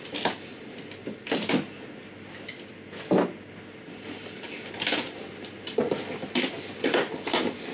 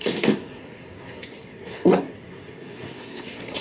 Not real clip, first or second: second